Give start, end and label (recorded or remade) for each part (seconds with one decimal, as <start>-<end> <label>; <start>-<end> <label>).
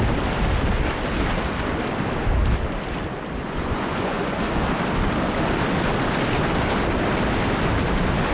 0.0-3.4 recorded; 3.4-4.6 remade; 4.6-8.3 recorded